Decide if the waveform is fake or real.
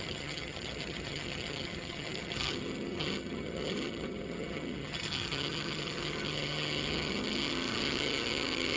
fake